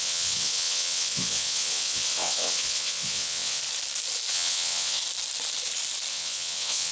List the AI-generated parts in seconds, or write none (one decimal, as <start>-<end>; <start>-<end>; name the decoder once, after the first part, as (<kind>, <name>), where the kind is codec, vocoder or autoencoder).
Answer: 0.0-3.6 (vocoder, WaveNeXt); 4.3-5.0; 6.1-6.9